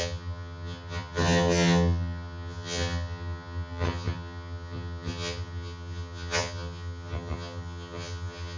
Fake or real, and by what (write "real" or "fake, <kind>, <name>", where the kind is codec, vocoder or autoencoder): fake, vocoder, HiFi-GAN